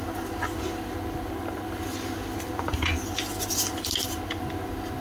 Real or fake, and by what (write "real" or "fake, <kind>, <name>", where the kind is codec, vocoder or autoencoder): real